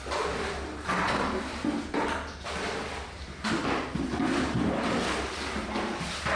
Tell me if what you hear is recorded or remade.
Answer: recorded